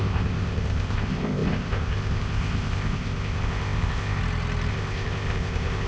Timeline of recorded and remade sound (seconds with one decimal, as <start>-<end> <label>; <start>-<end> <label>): 0.0-4.2 remade; 4.2-4.7 recorded; 4.7-5.9 remade